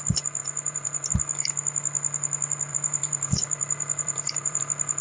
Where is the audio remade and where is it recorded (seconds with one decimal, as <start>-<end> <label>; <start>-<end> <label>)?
0.0-0.4 recorded; 0.4-1.1 remade; 1.1-2.7 recorded; 2.7-4.6 remade; 4.6-5.0 recorded

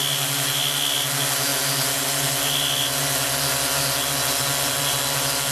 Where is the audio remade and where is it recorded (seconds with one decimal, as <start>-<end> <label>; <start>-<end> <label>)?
0.0-5.5 recorded

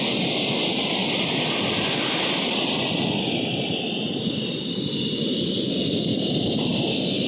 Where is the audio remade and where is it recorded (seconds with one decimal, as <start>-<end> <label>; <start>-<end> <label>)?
0.0-7.3 recorded

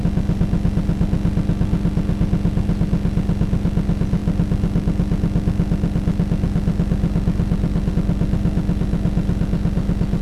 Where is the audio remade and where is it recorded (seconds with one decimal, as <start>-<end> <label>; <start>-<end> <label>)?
0.0-10.2 recorded

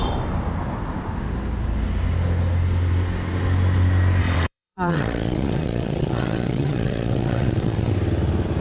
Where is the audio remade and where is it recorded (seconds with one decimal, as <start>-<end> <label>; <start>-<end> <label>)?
0.0-4.2 recorded; 4.2-7.9 remade; 7.9-8.6 recorded

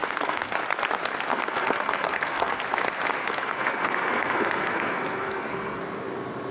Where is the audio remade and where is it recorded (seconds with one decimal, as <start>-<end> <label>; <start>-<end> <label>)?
0.0-0.6 remade; 0.6-1.3 recorded; 1.3-2.6 remade; 2.6-3.2 recorded; 3.2-5.8 remade; 5.8-6.5 recorded